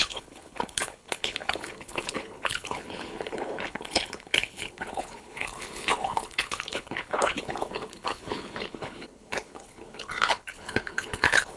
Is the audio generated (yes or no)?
yes